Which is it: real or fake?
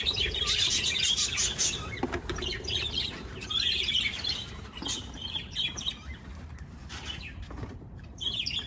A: fake